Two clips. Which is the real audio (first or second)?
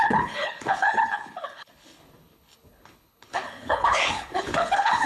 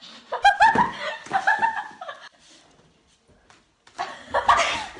second